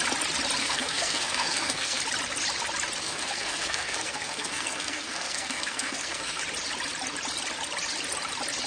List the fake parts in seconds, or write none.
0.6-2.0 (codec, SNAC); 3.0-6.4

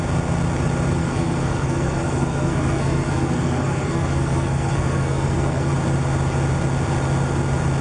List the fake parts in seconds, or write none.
1.0-5.7 (codec, SNAC)

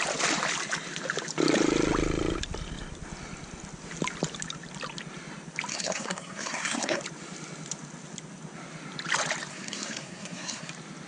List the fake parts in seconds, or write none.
5.7-7.0 (codec, SNAC); 9.5-10.7

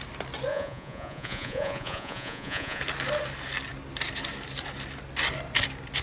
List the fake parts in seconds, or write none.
0.5-2.8 (vocoder, Vocos)

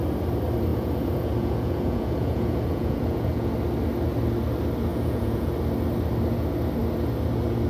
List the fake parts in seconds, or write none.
0.7-3.5 (vocoder, Vocos); 4.9-5.5

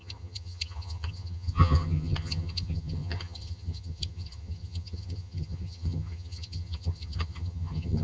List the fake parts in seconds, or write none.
0.0-8.0 (vocoder, HiFi-GAN)